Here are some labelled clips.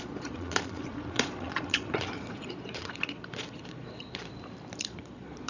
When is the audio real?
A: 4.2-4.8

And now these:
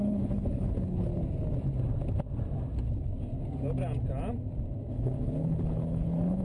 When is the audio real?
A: 1.1-4.9

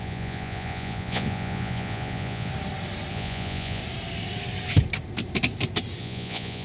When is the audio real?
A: 2.5-3.1; 3.8-6.0

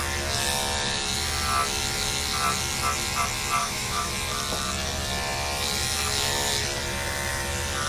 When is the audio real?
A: 0.0-3.6; 4.1-7.9

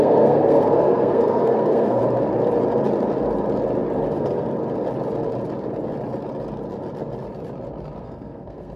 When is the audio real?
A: 2.0-4.1; 4.5-8.0

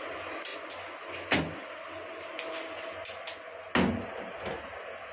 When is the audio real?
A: 0.0-5.1

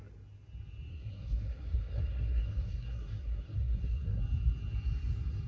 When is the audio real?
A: 0.0-0.9; 4.2-5.5